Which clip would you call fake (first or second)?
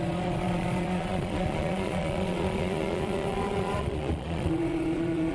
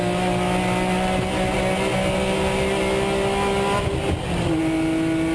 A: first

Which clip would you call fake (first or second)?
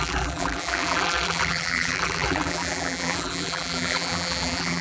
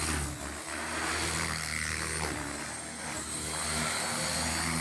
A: first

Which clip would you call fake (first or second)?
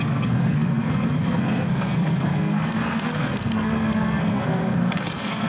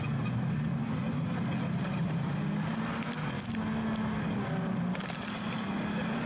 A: first